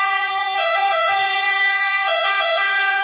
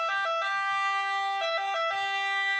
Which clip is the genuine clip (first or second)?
second